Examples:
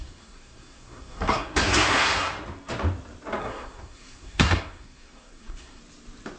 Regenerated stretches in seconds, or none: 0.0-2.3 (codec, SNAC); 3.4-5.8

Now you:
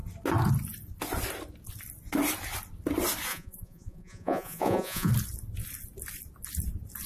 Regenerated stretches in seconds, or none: 3.3-5.1 (vocoder, Vocos)